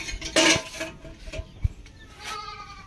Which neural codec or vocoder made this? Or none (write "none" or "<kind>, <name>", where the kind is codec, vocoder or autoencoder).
none